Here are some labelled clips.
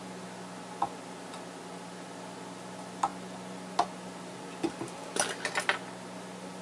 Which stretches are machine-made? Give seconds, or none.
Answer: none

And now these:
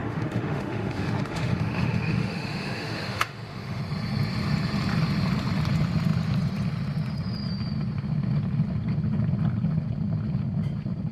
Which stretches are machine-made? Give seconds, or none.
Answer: 0.0-3.8 (autoencoder, DAC-VAE)

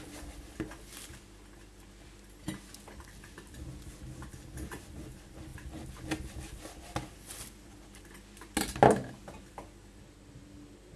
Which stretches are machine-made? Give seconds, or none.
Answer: none